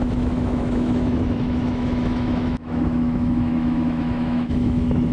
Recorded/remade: remade